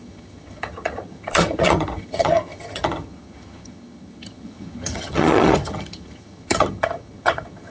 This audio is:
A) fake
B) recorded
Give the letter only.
A